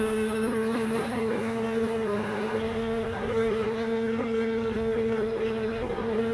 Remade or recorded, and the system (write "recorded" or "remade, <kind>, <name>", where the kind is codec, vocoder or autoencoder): remade, codec, SNAC